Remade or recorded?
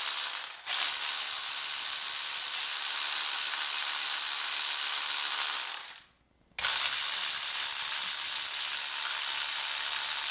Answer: recorded